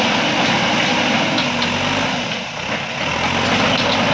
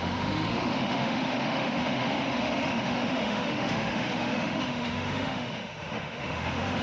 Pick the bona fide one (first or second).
first